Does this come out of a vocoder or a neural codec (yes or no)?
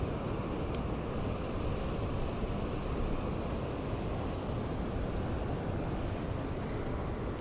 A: no